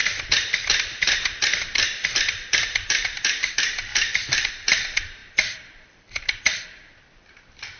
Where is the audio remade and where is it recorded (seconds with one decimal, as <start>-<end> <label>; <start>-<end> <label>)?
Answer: 0.0-7.8 remade